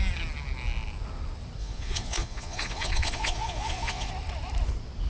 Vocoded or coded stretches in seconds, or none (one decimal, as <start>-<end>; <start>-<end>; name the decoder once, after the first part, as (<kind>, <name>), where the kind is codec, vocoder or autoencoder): 1.6-4.1 (vocoder, Vocos)